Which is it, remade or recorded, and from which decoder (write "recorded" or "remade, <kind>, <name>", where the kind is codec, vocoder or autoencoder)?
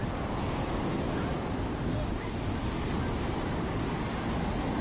recorded